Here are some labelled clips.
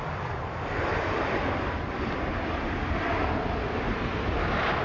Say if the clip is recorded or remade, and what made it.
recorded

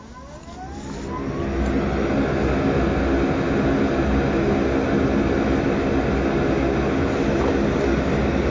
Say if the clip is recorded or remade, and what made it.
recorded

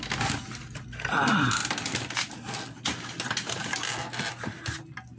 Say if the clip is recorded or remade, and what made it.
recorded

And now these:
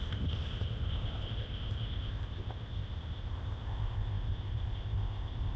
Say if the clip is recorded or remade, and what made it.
remade, codec, ZipCodec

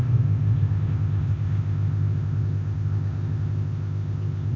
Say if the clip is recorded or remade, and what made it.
remade, codec, ZipCodec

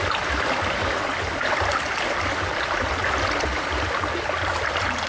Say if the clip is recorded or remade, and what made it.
recorded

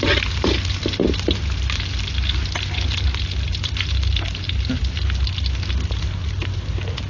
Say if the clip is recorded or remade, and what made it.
recorded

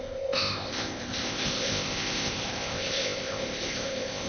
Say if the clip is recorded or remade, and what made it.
remade, codec, ZipCodec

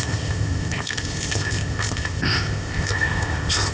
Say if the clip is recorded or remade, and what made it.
remade, codec, ZipCodec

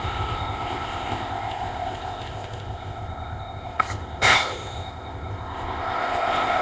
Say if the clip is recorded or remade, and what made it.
remade, codec, ZipCodec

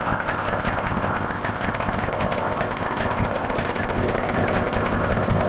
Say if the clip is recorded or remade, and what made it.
remade, codec, ZipCodec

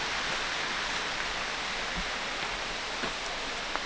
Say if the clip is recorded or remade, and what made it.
recorded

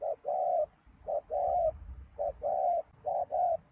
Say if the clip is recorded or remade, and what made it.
recorded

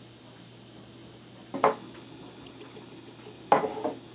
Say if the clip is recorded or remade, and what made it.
recorded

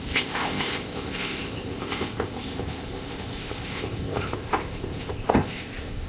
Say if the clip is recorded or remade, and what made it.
remade, codec, ZipCodec